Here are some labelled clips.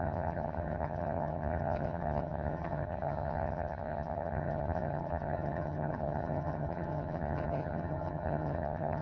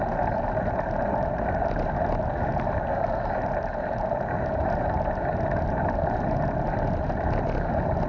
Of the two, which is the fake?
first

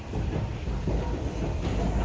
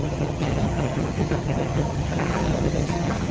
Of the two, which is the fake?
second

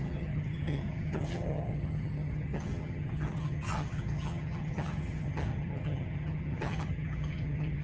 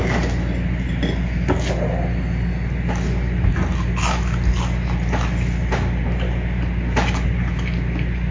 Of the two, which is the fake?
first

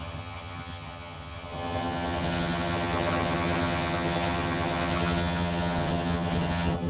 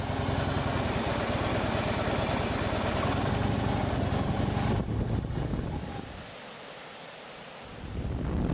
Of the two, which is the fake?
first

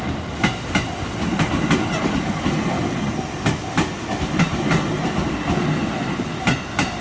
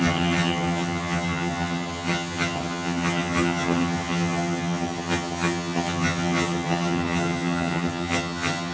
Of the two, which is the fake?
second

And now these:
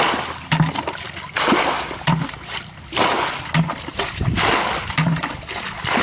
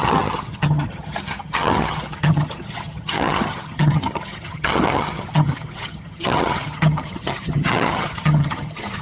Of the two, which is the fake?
second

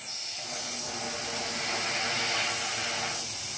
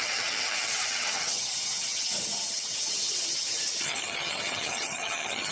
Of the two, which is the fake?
second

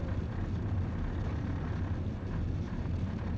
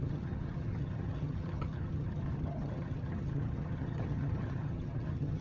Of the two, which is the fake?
second